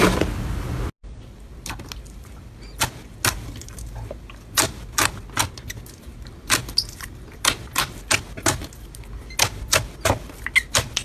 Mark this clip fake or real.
real